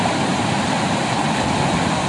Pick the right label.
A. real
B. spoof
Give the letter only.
A